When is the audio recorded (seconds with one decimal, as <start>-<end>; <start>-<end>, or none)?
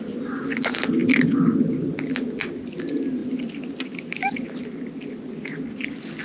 0.0-3.2; 5.2-6.2